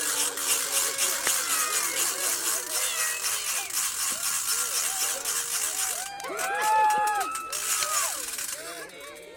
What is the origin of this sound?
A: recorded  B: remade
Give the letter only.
A